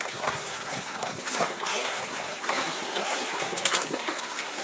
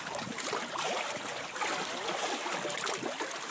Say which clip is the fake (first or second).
first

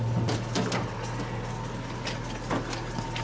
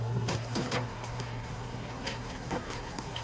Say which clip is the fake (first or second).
second